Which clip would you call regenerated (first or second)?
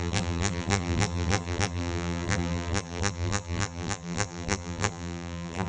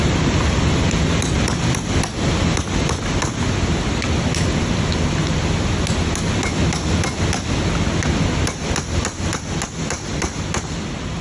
first